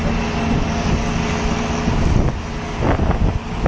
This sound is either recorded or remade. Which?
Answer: recorded